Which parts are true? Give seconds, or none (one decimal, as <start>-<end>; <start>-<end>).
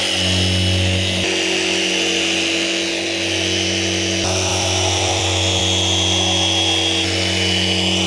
0.0-4.5; 5.6-8.1